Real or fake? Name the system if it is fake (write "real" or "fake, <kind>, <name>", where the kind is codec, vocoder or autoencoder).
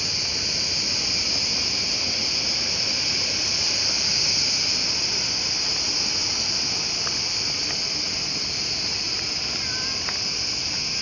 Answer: real